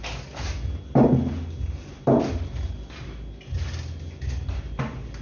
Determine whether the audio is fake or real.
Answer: real